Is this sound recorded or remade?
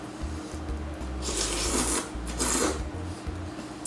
recorded